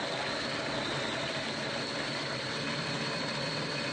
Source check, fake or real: real